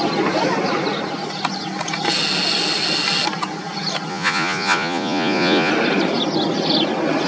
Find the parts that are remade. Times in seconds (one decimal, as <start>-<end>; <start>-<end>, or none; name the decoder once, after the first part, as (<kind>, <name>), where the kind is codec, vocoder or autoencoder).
4.1-5.7 (vocoder, Vocos)